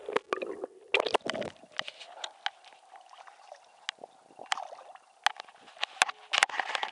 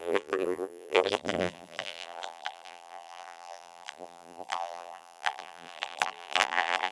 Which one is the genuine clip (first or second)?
first